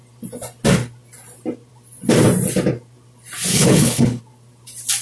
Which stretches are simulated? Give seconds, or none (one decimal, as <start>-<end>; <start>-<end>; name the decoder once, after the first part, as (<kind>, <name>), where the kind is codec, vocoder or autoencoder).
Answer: 3.5-4.2 (codec, HILCodec)